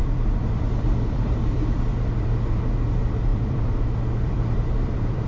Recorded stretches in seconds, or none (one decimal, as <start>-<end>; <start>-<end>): 2.6-3.3

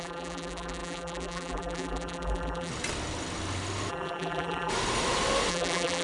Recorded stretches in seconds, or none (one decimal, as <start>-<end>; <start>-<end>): 2.7-3.9; 4.7-5.5